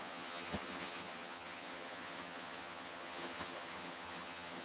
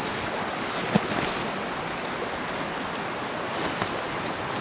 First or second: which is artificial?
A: first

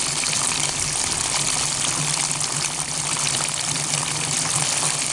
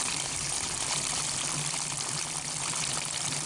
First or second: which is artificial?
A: second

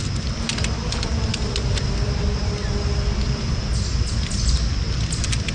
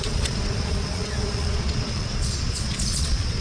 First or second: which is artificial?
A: second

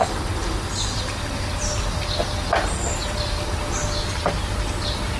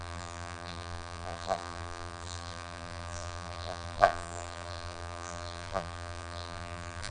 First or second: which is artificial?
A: second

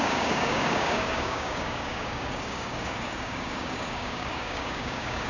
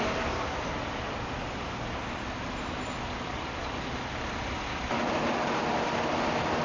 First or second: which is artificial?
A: first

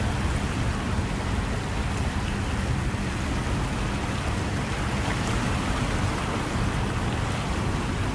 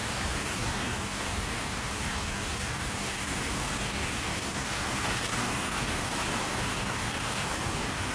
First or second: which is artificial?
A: second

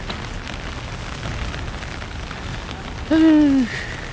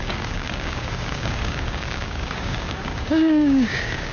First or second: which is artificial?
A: second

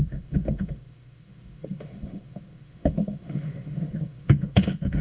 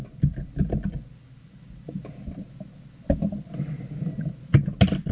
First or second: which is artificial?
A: first